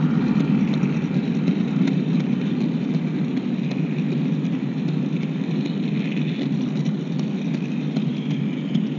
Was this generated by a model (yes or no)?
no